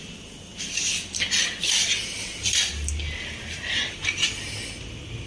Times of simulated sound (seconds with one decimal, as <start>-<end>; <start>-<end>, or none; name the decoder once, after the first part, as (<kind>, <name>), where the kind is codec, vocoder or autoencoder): none